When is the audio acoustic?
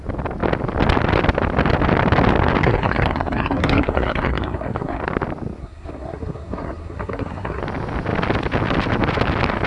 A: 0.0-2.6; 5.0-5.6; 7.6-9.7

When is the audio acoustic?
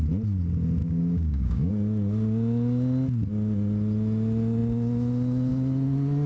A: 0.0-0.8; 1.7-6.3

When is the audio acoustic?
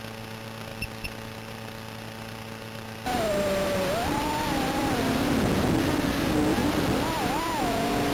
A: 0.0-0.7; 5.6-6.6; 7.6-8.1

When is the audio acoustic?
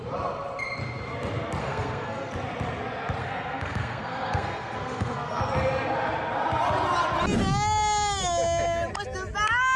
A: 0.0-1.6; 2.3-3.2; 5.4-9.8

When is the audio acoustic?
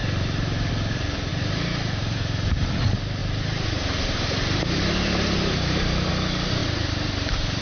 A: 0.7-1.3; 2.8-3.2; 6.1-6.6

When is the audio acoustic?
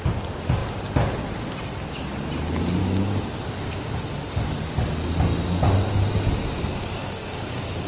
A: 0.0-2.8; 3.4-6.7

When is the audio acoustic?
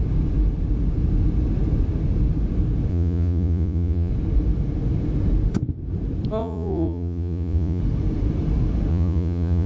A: 0.0-2.9; 4.1-6.4; 7.8-8.9